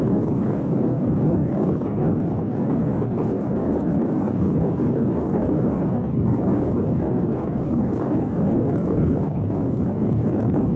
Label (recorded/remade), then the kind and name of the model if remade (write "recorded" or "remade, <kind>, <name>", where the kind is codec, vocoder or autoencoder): remade, codec, DAC